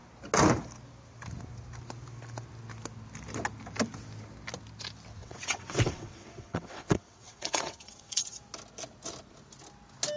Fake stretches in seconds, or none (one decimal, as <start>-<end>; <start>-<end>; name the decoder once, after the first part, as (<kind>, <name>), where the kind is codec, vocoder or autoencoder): 5.2-8.4 (vocoder, WaveNeXt)